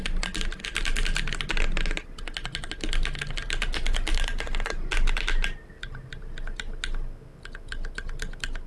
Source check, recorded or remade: recorded